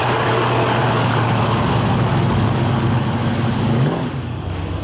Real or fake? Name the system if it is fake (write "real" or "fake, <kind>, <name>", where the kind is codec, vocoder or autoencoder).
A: fake, codec, DAC